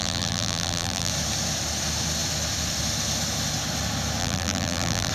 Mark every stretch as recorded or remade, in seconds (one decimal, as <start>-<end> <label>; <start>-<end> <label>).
0.0-1.1 remade; 1.1-4.2 recorded; 4.2-5.1 remade